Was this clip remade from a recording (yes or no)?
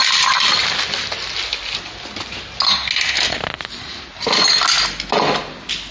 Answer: no